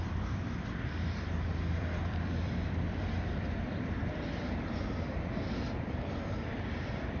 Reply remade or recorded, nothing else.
remade